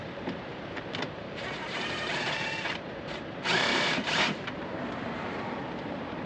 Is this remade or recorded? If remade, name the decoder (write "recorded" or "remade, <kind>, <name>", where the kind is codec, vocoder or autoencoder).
remade, vocoder, BigVGAN v2